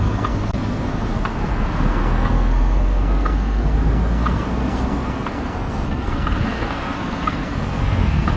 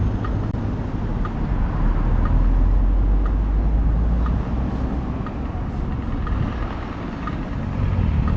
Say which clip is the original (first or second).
second